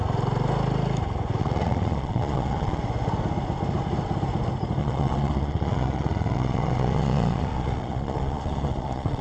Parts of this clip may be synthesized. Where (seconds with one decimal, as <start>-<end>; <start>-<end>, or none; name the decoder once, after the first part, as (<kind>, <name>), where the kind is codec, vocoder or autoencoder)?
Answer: 1.4-2.8 (vocoder, Vocos); 4.8-9.2